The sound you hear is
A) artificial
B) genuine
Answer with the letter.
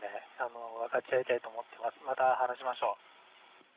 B